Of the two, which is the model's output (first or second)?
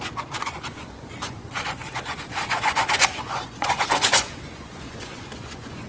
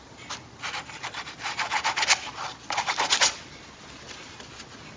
first